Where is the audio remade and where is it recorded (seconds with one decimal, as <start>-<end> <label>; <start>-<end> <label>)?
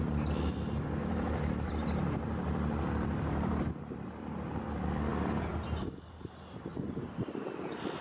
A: 0.0-1.0 recorded; 1.0-1.7 remade; 1.7-8.0 recorded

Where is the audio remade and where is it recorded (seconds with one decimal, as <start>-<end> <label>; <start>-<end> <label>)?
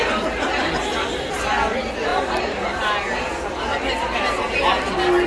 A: 0.0-5.3 recorded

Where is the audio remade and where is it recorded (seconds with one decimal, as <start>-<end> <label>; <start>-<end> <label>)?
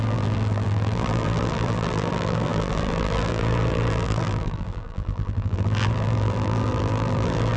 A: 0.0-7.6 remade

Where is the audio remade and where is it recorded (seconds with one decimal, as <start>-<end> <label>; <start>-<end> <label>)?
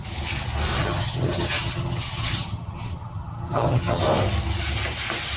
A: 0.0-0.8 recorded; 0.8-4.0 remade; 4.0-5.4 recorded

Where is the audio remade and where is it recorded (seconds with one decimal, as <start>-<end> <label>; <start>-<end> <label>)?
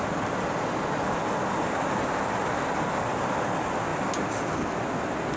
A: 0.0-5.4 recorded